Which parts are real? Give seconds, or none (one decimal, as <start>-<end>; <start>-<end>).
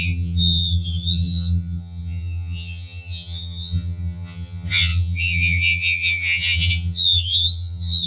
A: none